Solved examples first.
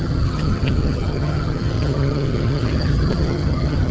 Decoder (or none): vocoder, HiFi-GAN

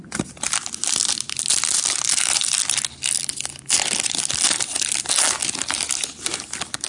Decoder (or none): none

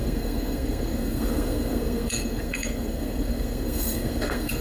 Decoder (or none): codec, SNAC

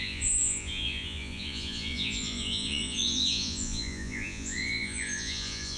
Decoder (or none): vocoder, Vocos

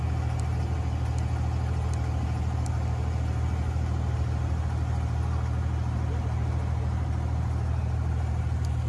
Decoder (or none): none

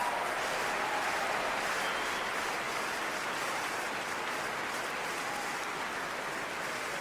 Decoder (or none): none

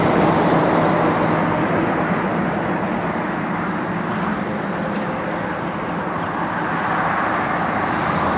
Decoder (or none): none